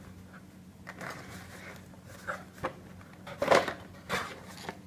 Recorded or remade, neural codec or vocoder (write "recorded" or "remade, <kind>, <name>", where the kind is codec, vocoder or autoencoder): recorded